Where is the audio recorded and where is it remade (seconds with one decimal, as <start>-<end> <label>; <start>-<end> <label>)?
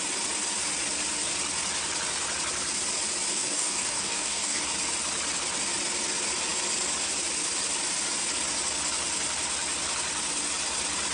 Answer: 0.0-3.3 recorded; 3.3-4.6 remade; 4.6-11.1 recorded